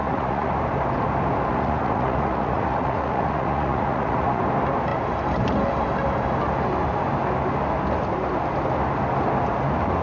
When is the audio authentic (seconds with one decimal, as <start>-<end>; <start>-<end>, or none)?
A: 0.5-1.5; 4.4-10.0